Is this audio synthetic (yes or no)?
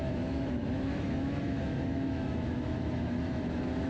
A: yes